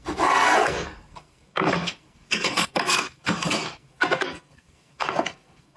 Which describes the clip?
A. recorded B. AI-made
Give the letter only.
B